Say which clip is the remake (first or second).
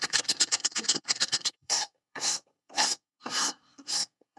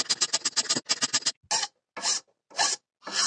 first